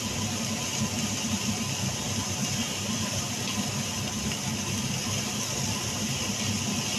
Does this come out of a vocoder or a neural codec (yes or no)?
no